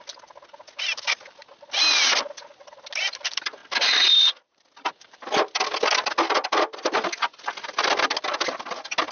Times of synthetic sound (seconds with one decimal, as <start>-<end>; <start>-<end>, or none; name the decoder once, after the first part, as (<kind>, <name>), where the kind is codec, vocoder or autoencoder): none